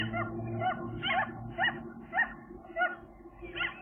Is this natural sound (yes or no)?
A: yes